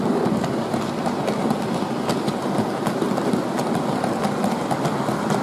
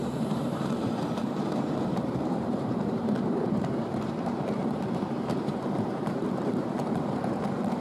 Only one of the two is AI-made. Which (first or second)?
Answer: second